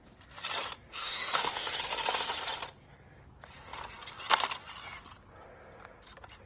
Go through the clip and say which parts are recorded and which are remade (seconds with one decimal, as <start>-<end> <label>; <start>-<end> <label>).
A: 0.0-0.9 recorded; 0.9-1.7 remade; 1.7-6.5 recorded